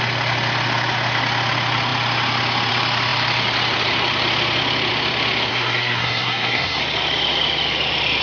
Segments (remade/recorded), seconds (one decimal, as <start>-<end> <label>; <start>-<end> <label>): 0.0-5.5 recorded; 5.5-6.8 remade; 6.8-8.2 recorded